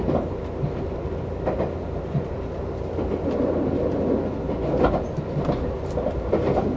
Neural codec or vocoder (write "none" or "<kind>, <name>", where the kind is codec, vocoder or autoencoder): none